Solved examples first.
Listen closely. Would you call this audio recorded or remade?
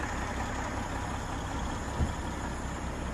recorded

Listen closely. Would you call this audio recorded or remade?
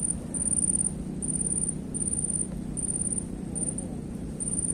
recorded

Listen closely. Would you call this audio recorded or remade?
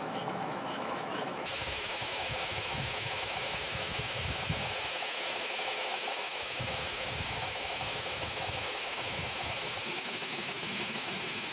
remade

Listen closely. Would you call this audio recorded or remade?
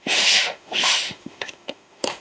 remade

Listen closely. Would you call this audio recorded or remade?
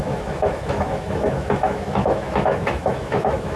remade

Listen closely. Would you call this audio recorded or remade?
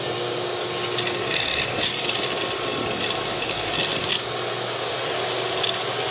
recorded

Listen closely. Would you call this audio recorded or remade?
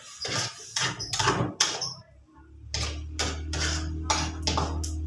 recorded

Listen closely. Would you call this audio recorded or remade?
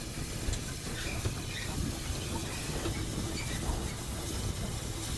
recorded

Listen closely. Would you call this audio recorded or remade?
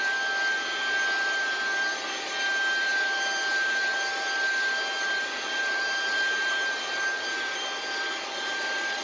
recorded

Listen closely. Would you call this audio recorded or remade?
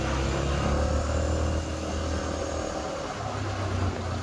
recorded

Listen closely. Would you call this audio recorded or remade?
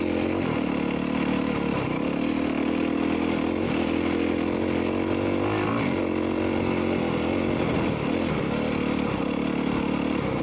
recorded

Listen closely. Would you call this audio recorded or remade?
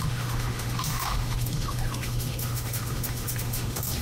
remade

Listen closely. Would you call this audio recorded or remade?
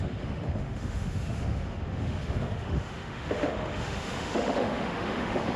remade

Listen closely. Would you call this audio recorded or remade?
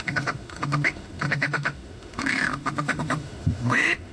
remade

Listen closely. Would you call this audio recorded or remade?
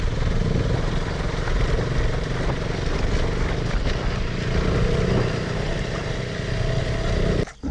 recorded